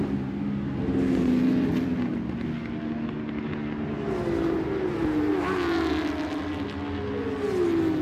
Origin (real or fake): real